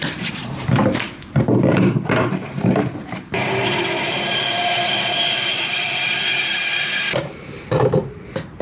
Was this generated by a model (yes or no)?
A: yes